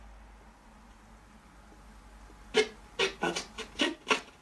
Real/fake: real